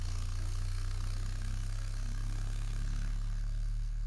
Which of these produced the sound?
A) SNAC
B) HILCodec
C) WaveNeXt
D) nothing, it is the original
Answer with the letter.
A